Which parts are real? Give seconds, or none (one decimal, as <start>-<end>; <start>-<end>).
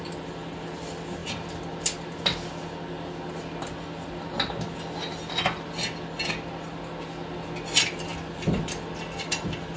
0.0-9.8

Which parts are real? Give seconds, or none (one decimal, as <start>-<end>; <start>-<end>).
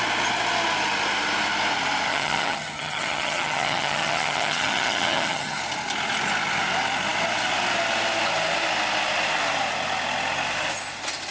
0.0-2.1; 5.6-11.3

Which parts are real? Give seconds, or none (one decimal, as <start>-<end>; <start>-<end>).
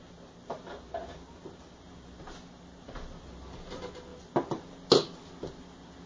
0.0-6.1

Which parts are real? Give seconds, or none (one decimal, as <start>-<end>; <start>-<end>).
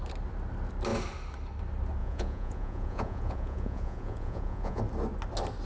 0.0-2.0; 4.8-5.7